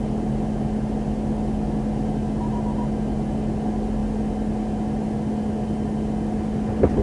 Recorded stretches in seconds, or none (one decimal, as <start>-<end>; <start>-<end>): 0.0-7.0